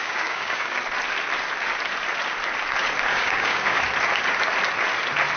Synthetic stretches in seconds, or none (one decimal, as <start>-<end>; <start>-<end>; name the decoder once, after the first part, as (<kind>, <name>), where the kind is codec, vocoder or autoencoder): 0.0-0.8 (codec, DAC); 3.1-3.8